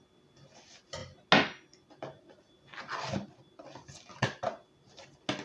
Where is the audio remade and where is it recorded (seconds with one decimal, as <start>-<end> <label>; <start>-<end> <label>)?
0.0-5.4 recorded